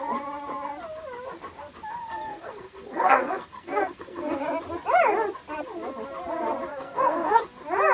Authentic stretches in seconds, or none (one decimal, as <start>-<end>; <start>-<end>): 0.0-2.0; 4.4-6.7; 7.4-7.9